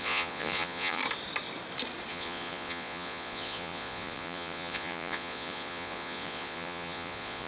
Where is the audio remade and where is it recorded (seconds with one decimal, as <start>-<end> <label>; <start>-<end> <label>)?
0.0-1.0 remade; 1.0-2.1 recorded; 2.1-7.5 remade